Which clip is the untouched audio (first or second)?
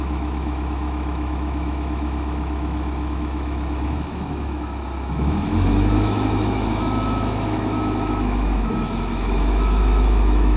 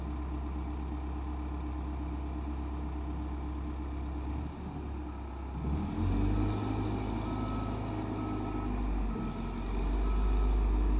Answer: second